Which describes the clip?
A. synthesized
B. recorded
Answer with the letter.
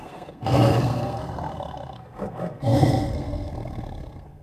A